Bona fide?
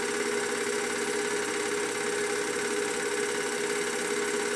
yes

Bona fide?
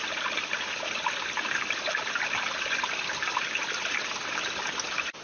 yes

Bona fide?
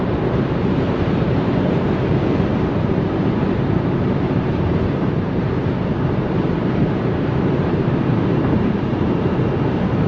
no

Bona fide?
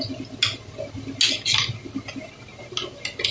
yes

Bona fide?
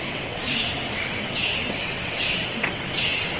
no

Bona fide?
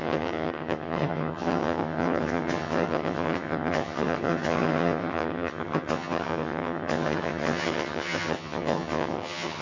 no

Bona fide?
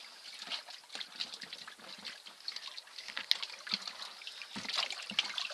yes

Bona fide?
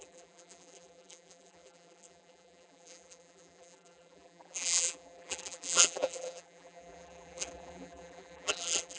no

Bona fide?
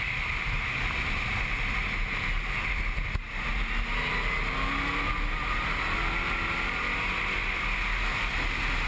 yes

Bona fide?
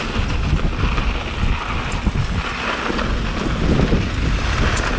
yes